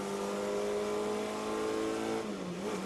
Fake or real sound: real